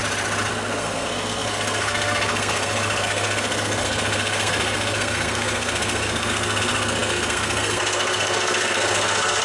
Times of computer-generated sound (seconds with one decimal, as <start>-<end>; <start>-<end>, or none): 0.5-9.4